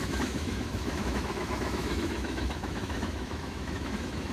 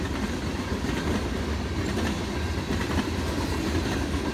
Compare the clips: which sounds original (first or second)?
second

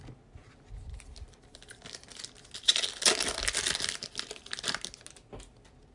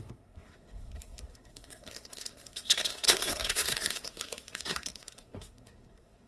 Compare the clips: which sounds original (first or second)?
first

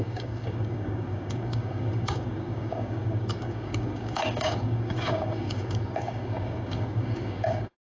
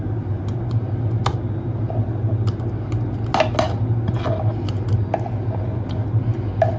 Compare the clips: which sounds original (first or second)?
second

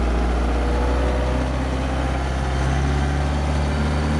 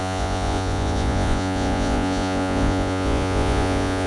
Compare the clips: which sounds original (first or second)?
first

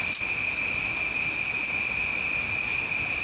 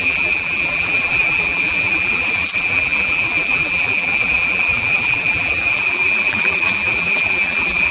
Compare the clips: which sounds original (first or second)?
first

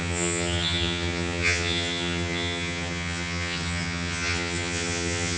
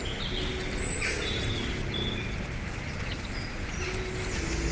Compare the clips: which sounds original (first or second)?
second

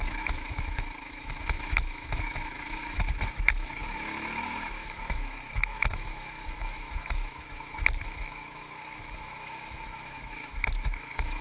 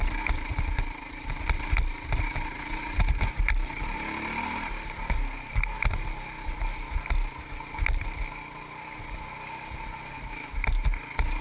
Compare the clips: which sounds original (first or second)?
second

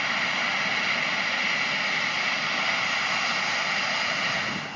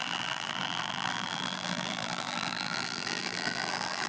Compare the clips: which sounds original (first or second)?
first